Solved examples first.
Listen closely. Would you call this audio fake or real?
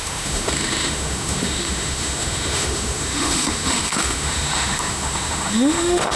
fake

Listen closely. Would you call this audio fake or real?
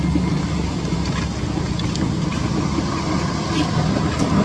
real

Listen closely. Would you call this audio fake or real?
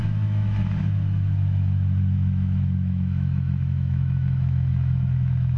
fake